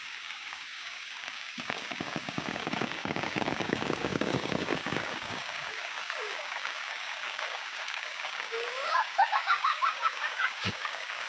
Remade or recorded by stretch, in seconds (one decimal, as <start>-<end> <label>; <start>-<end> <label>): 0.0-11.3 remade